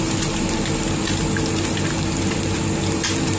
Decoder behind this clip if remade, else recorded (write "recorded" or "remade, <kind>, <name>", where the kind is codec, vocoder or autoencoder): recorded